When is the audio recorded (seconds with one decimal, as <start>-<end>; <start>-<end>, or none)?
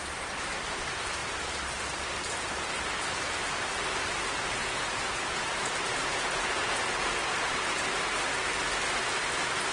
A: 0.0-4.6; 7.9-9.7